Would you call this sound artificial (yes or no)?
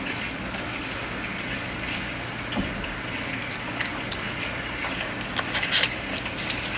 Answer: no